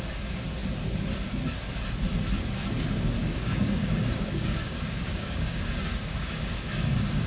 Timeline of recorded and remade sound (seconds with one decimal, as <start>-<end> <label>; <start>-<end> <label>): 0.0-3.2 recorded; 3.2-7.3 remade